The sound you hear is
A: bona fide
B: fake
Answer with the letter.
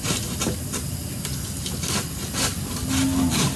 A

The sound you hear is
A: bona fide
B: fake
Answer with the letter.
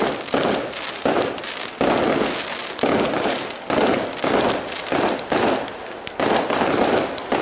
A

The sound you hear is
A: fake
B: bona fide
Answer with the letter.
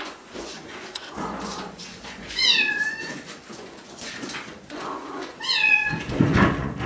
A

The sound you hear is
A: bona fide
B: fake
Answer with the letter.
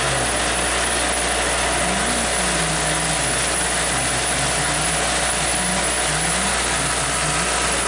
A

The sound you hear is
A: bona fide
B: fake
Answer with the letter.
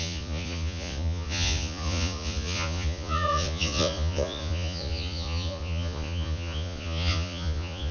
B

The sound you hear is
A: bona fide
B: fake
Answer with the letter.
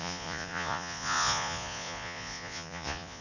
B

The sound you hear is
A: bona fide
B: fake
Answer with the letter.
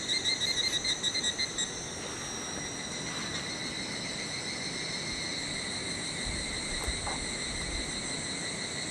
A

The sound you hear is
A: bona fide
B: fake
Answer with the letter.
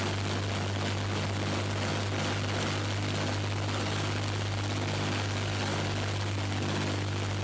A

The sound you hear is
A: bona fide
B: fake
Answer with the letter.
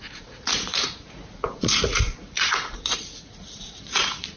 B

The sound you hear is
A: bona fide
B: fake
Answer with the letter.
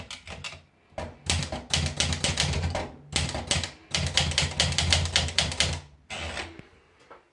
A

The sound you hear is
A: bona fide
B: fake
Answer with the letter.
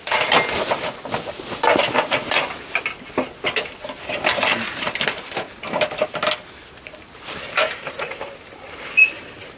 A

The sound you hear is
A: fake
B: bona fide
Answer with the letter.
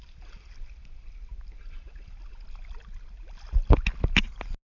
B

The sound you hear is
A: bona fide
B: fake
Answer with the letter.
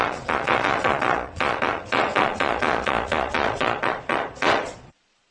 B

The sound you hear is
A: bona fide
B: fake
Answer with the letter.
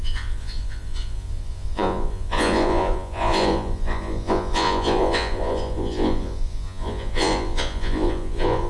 B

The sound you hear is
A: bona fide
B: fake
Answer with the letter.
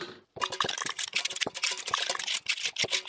A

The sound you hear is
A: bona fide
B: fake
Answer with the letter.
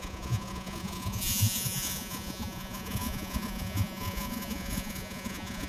B